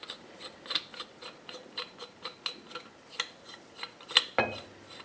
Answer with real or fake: real